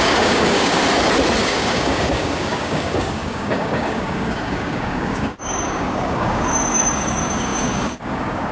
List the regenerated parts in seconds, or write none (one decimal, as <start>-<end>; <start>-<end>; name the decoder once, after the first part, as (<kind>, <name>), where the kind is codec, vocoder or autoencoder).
0.0-0.8 (codec, DAC); 1.4-8.5